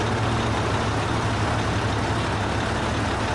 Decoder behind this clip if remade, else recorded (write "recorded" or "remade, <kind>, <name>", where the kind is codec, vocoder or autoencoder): recorded